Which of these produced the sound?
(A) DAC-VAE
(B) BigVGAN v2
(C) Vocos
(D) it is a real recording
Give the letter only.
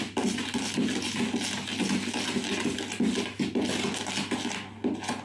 D